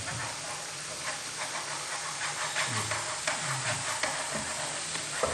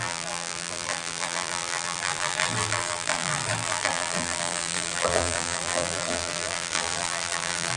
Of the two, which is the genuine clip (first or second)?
first